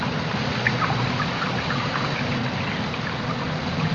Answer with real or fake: real